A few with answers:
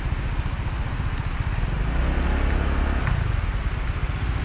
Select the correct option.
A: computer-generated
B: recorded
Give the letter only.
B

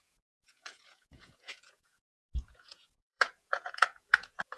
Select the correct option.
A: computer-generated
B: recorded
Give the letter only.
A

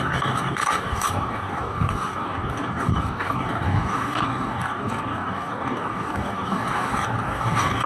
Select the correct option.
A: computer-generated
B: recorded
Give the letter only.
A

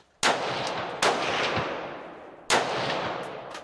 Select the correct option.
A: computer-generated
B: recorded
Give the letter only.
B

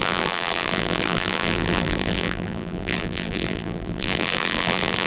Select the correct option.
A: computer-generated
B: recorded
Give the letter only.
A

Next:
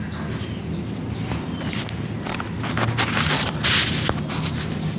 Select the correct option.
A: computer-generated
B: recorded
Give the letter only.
B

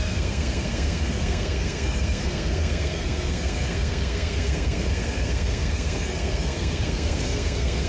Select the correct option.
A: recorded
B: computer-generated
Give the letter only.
B